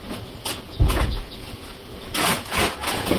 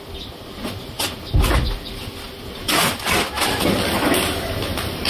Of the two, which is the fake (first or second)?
first